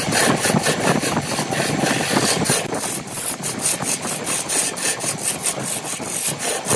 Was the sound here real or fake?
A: real